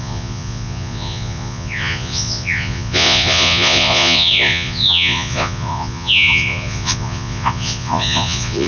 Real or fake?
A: fake